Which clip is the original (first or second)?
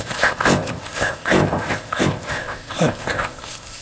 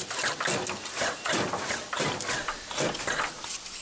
second